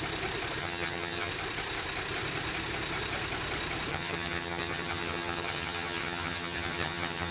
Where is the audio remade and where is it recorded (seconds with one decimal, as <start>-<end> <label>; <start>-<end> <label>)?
0.0-0.6 recorded; 0.6-1.3 remade; 1.3-3.9 recorded; 3.9-7.3 remade